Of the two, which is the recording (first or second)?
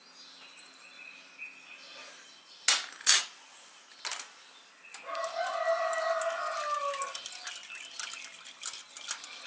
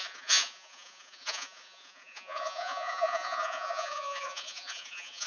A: first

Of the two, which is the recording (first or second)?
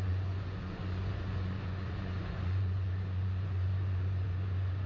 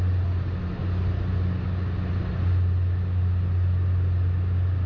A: second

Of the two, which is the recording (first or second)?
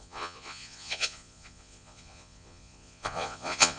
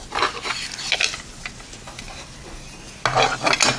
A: second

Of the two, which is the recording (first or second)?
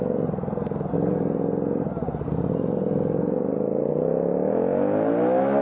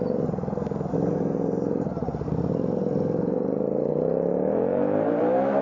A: first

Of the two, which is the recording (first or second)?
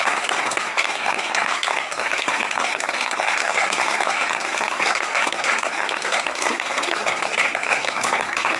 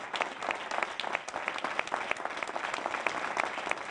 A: second